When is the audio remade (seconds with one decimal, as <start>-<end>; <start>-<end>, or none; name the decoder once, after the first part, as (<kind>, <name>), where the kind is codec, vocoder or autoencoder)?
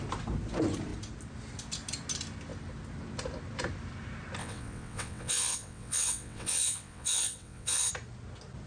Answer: 4.4-7.9 (vocoder, WaveNeXt)